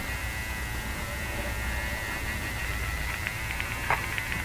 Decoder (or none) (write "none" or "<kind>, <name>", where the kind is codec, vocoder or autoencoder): none